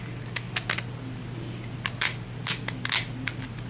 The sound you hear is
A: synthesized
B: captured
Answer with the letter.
B